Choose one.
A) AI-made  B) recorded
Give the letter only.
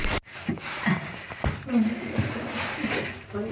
B